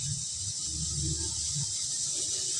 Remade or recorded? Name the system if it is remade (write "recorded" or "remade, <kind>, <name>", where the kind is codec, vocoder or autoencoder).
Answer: recorded